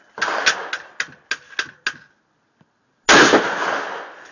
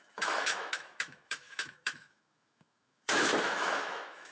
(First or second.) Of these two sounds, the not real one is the second